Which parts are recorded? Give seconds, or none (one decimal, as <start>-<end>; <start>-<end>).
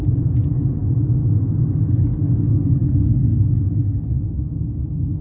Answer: 0.8-2.2